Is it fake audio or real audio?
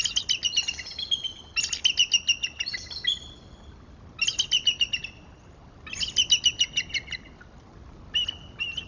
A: real